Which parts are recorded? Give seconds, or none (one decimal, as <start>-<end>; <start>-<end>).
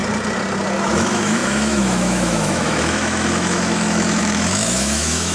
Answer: 0.0-0.8